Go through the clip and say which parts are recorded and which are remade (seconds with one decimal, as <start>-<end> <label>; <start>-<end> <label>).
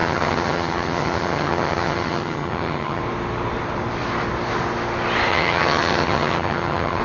0.0-3.0 remade; 3.0-5.3 recorded; 5.3-7.0 remade